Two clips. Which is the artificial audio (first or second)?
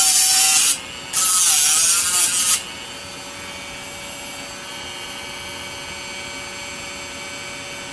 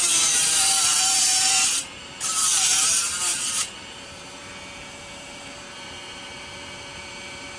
second